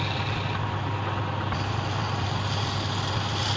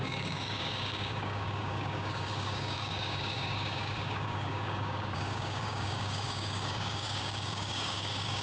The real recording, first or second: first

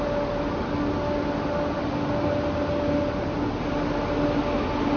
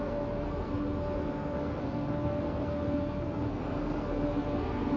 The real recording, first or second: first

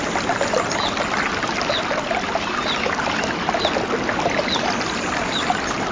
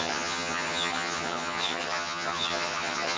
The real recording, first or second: first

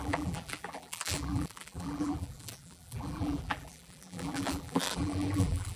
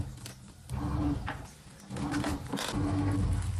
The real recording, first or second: second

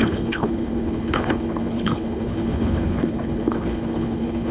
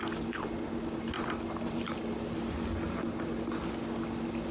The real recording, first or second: second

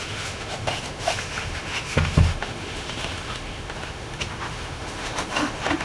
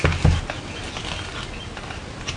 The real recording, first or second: second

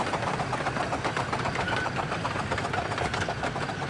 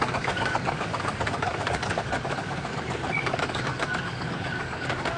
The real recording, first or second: first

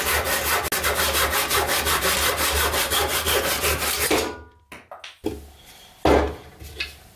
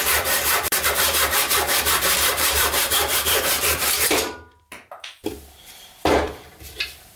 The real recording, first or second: first